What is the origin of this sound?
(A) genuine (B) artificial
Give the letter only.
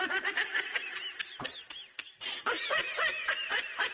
A